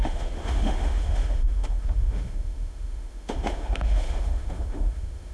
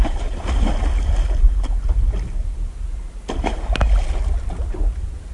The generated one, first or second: first